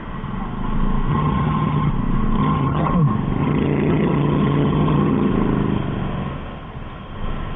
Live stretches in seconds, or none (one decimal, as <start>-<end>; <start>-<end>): 0.0-1.1; 1.9-2.4; 2.9-3.4; 5.3-7.6